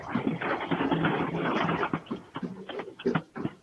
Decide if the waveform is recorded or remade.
recorded